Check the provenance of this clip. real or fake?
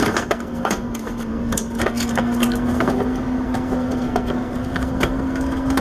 fake